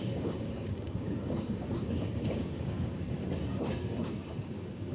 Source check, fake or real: fake